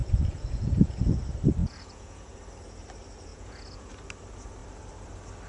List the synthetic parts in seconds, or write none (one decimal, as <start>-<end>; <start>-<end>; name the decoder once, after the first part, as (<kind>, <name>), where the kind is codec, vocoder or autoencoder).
0.0-1.2 (vocoder, Vocos); 1.6-2.4; 3.3-3.9